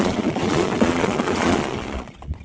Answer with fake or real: fake